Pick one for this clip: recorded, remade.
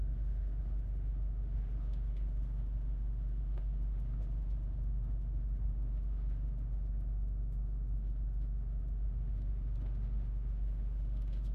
remade